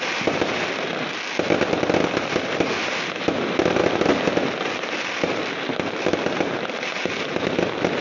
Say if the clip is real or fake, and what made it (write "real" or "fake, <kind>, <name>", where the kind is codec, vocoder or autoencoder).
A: real